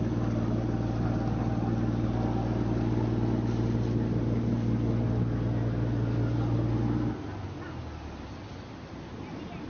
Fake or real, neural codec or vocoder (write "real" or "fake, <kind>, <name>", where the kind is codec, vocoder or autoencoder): real